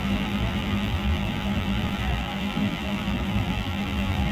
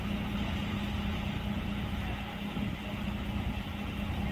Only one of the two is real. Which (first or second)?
second